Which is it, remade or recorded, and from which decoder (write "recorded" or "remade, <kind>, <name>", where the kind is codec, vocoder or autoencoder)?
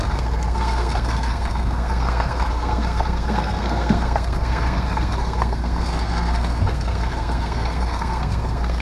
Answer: remade, codec, SNAC